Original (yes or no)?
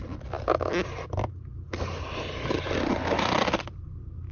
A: yes